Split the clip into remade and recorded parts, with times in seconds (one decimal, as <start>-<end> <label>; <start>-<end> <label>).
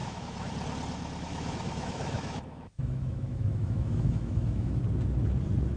0.0-0.5 remade; 0.5-1.3 recorded; 1.3-4.8 remade; 4.8-5.8 recorded